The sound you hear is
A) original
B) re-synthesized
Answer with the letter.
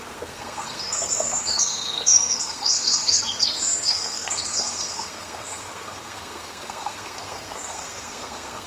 B